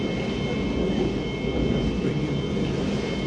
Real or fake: real